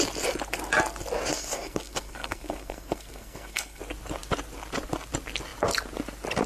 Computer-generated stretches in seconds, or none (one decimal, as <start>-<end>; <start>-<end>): 1.3-3.8